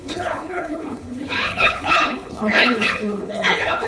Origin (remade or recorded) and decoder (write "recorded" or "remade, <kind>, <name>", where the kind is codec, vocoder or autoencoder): remade, codec, HILCodec